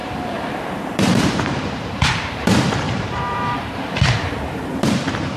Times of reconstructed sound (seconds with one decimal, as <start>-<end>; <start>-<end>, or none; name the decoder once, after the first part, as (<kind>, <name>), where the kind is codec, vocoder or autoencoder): 0.0-5.4 (vocoder, BigVGAN v2)